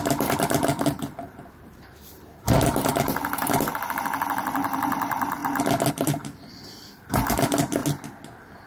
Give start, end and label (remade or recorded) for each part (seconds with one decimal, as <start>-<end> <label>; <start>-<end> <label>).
0.0-5.4 remade; 5.4-5.9 recorded; 5.9-7.8 remade; 7.8-8.7 recorded